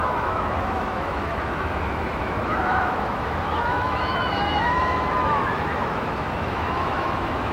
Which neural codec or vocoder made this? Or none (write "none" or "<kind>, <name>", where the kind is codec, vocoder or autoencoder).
autoencoder, DAC-VAE